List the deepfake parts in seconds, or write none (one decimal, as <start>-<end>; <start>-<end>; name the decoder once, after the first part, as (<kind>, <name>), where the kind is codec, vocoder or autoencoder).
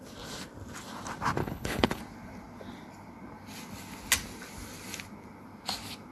1.4-2.0 (codec, HILCodec)